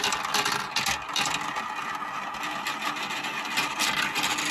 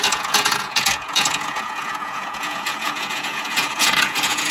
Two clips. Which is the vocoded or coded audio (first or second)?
second